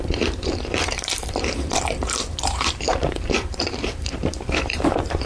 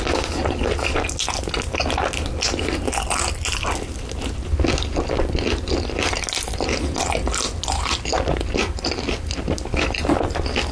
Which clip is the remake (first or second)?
first